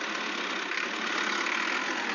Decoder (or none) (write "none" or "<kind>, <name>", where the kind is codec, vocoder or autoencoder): none